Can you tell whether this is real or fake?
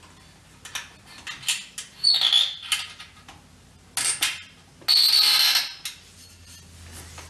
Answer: real